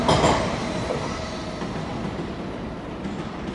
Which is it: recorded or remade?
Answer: recorded